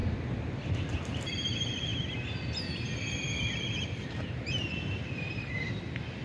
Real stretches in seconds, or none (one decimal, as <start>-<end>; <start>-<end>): 0.0-0.7; 1.9-3.5

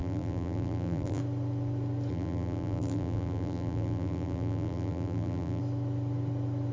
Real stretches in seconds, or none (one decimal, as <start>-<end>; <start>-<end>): 1.2-2.1; 5.6-6.7

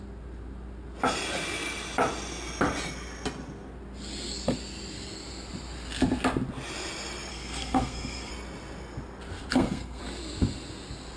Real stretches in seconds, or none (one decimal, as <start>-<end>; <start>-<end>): 0.0-7.3; 8.3-9.5; 10.0-11.2

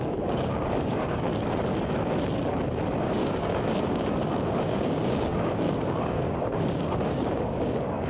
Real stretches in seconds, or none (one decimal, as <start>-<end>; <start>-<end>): 1.3-3.0